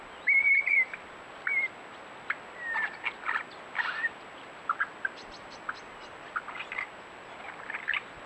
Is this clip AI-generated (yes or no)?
no